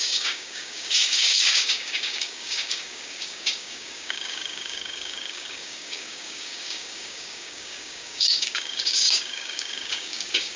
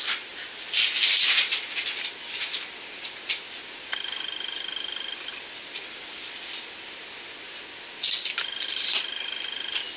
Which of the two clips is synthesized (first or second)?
first